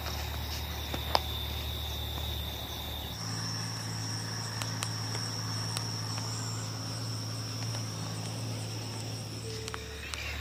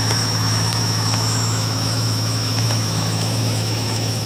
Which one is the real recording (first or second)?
first